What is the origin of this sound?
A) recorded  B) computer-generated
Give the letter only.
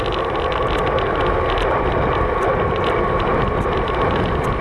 A